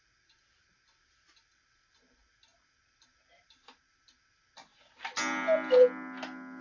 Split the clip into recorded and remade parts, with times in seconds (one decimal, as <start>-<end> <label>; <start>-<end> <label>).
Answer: 0.0-6.6 recorded